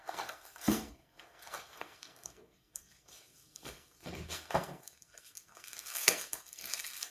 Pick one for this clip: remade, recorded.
remade